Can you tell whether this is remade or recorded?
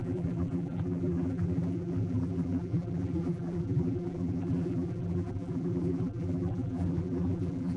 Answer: remade